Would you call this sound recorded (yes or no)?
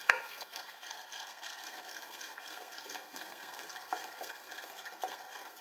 no